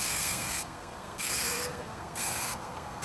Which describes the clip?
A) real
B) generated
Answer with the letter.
B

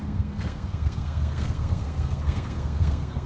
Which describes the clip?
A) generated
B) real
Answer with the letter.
A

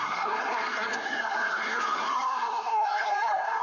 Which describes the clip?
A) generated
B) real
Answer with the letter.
A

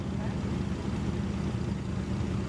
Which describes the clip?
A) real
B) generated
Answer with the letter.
A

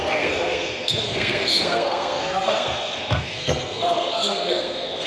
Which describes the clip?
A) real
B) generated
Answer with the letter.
B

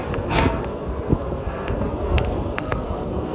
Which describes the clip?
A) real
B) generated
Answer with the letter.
B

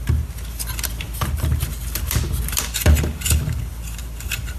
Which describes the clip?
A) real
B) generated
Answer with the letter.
A